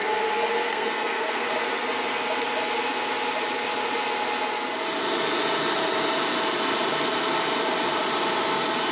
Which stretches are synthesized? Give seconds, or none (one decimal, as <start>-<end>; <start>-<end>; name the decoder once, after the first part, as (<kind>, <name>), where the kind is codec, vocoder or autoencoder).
0.7-1.5 (codec, SNAC)